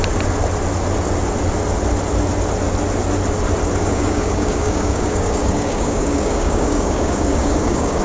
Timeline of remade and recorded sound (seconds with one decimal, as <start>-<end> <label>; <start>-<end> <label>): 0.0-3.8 recorded; 3.8-8.0 remade

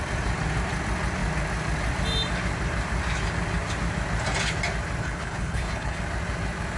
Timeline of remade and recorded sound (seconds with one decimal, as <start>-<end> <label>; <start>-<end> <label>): 0.0-5.0 recorded; 5.0-6.0 remade; 6.0-6.8 recorded

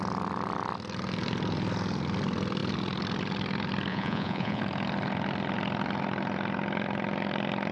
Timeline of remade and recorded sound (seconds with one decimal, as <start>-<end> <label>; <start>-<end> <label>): 0.0-3.9 recorded; 3.9-4.6 remade; 4.6-7.7 recorded

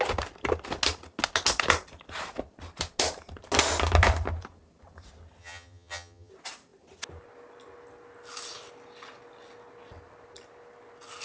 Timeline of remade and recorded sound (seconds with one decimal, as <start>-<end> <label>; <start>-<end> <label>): 0.0-5.4 recorded; 5.4-6.3 remade; 6.3-11.2 recorded

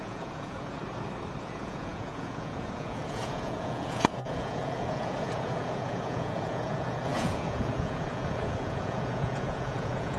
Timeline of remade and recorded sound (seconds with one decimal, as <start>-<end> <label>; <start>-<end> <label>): 0.0-0.8 remade; 0.8-1.4 recorded; 1.4-10.2 remade

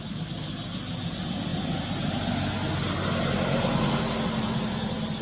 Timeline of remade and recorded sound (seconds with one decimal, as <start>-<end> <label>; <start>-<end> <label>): 0.0-5.2 recorded

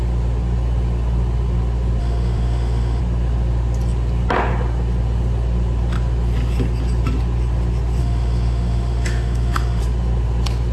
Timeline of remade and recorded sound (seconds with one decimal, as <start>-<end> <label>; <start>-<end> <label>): 0.0-2.0 recorded; 2.0-3.0 remade; 3.0-8.0 recorded; 8.0-9.8 remade; 9.8-10.7 recorded

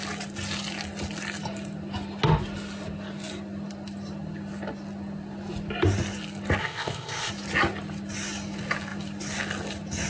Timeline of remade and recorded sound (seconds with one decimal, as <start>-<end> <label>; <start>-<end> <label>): 0.0-6.6 recorded; 6.6-7.3 remade; 7.3-10.1 recorded